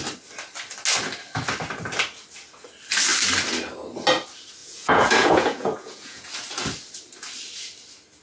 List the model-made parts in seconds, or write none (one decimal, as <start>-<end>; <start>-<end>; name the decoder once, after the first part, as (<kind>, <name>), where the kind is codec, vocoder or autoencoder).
4.6-6.3 (vocoder, Vocos)